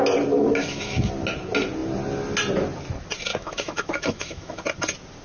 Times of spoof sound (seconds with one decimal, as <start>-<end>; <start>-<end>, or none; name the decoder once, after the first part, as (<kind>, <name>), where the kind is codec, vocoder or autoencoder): 0.6-1.1 (autoencoder, DAC-VAE); 3.3-4.6

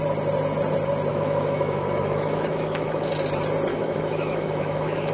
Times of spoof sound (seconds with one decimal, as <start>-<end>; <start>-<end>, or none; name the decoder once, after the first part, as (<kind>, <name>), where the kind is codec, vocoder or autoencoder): 1.1-3.1 (autoencoder, DAC-VAE); 3.7-5.1

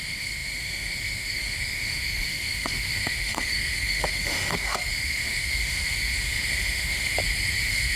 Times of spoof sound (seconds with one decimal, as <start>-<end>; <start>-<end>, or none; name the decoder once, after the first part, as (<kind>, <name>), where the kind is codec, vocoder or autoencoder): 0.0-7.1 (autoencoder, DAC-VAE); 7.6-8.0

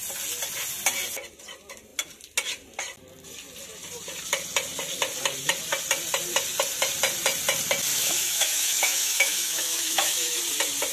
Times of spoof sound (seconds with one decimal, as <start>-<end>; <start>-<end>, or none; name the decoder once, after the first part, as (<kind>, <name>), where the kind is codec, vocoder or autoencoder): 7.9-10.4 (autoencoder, DAC-VAE)